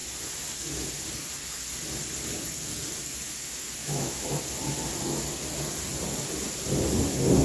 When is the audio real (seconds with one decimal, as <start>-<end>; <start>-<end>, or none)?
0.0-3.8; 4.4-7.4